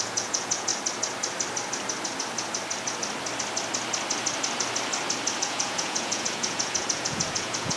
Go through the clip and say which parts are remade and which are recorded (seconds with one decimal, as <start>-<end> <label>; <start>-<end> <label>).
0.0-0.7 remade; 0.7-5.4 recorded; 5.4-7.8 remade